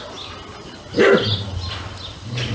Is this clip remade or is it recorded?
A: recorded